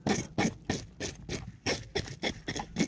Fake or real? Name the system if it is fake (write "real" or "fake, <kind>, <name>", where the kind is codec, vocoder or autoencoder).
real